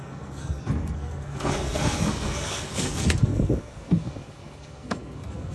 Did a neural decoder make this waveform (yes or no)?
yes